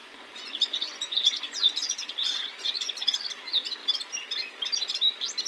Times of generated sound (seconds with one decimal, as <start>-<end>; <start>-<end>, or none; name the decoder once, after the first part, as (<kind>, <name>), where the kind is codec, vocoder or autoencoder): 0.0-3.3 (vocoder, Vocos)